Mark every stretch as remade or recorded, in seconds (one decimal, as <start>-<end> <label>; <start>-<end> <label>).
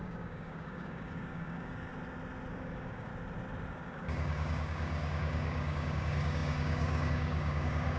0.0-1.9 remade; 1.9-2.5 recorded; 2.5-3.1 remade; 3.1-3.7 recorded; 3.7-8.0 remade